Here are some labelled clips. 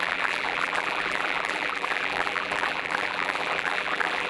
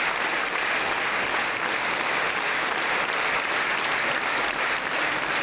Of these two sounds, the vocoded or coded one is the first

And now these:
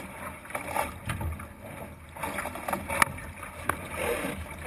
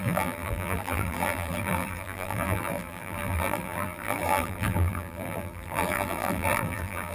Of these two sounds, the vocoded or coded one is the second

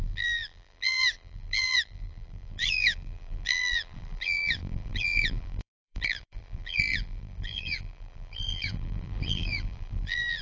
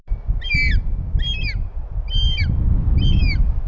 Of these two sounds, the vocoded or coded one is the first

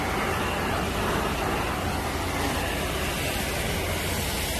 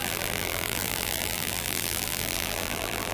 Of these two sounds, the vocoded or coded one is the second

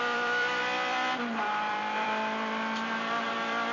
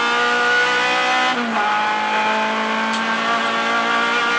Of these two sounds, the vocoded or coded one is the first